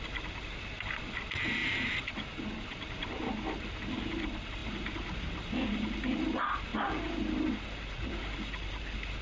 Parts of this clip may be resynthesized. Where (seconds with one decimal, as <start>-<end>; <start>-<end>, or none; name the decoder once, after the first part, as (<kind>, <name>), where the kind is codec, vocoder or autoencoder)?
none